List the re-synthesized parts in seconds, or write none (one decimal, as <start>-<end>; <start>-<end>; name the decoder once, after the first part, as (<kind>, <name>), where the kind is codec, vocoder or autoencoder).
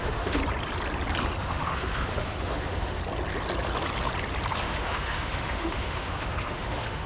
0.0-0.4 (autoencoder, DAC-VAE); 1.4-3.0; 4.6-7.1